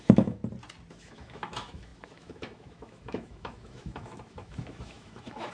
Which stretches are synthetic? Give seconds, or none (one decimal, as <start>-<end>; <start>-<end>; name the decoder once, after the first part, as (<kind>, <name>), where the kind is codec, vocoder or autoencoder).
0.0-0.4 (autoencoder, DAC-VAE); 0.9-5.5